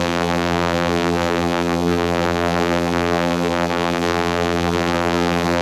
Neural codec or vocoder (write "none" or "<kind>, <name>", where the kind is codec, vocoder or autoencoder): vocoder, BigVGAN v2